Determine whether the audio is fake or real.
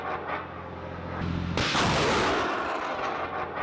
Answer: real